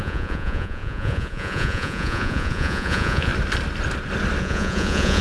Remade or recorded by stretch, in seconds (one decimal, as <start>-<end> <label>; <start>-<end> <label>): 0.0-3.3 remade; 3.3-4.4 recorded; 4.4-5.2 remade